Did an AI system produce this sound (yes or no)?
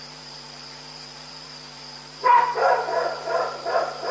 yes